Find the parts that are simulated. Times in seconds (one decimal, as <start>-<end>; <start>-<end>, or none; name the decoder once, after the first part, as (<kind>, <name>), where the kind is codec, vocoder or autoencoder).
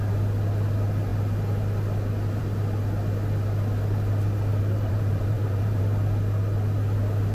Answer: 4.5-5.8 (vocoder, BigVGAN v2)